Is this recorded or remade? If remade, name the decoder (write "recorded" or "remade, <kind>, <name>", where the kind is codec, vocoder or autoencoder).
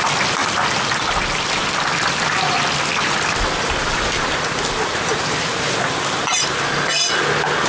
recorded